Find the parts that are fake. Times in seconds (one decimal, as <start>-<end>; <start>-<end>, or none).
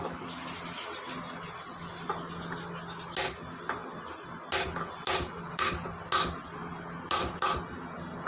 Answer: none